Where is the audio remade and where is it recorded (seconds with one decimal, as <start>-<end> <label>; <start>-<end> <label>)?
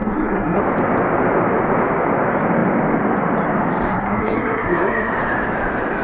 0.0-0.6 remade; 0.6-3.9 recorded; 3.9-5.1 remade; 5.1-6.0 recorded